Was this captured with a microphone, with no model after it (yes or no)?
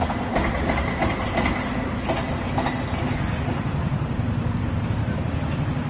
yes